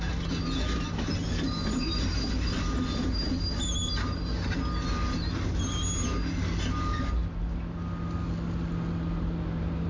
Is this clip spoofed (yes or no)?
no